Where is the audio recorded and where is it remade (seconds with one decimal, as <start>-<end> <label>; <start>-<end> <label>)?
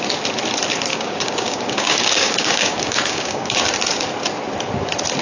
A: 0.0-0.9 recorded; 0.9-3.6 remade; 3.6-5.2 recorded